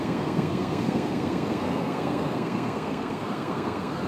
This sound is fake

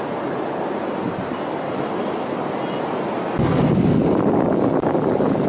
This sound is real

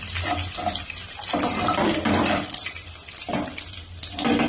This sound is fake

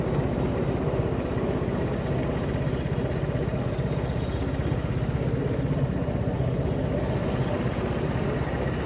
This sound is real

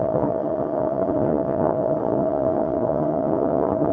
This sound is fake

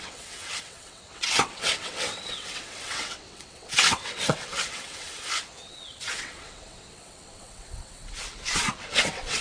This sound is fake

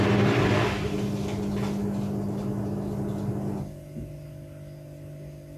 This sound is real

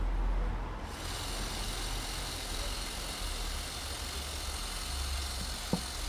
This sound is real